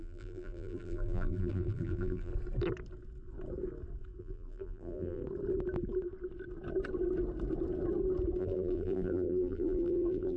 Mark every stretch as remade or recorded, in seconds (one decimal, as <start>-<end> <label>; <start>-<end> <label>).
0.0-2.3 remade; 2.3-4.2 recorded; 4.2-5.2 remade; 5.2-8.4 recorded; 8.4-10.4 remade